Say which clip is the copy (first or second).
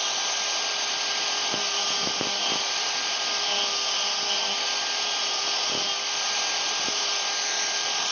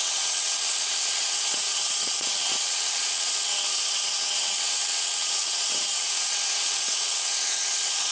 second